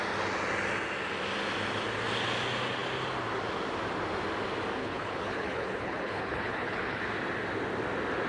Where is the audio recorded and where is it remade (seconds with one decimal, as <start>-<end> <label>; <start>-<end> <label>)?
0.0-4.8 recorded; 4.8-7.0 remade; 7.0-8.3 recorded